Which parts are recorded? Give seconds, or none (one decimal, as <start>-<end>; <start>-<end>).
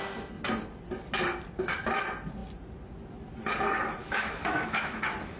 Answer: 0.0-4.0; 5.0-5.4